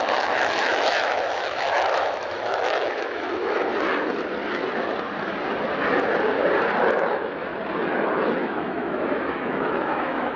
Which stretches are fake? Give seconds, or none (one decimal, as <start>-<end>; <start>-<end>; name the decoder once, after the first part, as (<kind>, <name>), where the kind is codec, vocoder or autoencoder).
0.0-3.7 (autoencoder, DAC-VAE); 7.1-7.5; 8.4-10.4